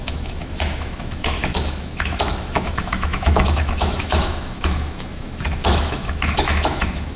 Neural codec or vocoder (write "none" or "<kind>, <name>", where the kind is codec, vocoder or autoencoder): autoencoder, DAC-VAE